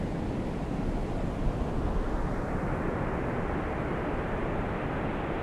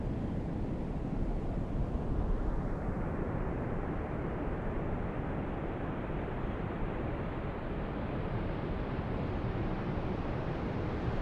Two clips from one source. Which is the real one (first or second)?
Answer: first